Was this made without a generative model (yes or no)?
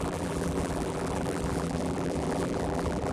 no